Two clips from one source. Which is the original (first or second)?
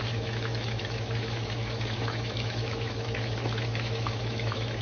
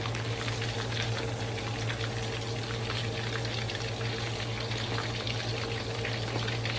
second